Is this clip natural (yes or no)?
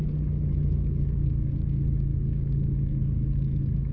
no